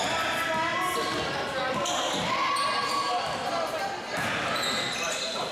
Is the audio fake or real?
real